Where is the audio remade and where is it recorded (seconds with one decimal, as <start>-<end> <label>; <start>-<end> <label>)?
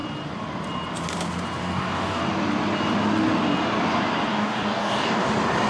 0.0-1.6 recorded; 1.6-2.2 remade; 2.2-4.3 recorded; 4.3-5.3 remade; 5.3-5.7 recorded